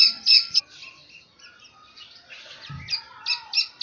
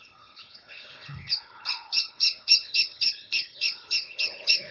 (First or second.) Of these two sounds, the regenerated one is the second